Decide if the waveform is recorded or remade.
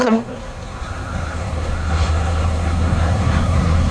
remade